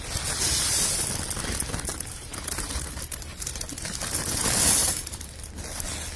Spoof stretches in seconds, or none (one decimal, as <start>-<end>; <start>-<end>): 1.9-3.7; 4.8-5.5